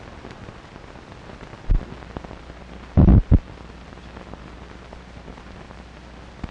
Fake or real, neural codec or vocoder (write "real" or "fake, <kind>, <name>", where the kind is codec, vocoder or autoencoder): fake, vocoder, BigVGAN v2